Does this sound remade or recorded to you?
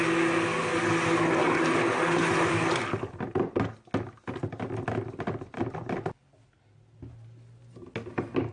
recorded